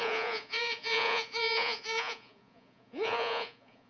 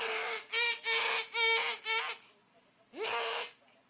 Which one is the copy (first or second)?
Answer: first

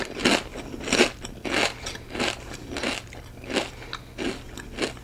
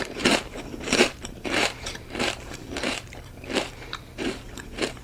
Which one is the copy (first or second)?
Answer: second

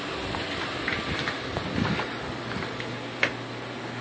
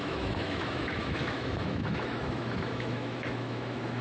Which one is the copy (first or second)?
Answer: second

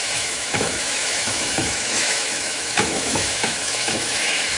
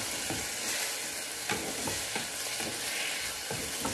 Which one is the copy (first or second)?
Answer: first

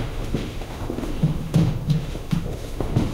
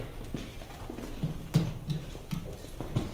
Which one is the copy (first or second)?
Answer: first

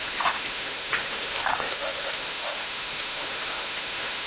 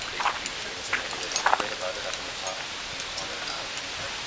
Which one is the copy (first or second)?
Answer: first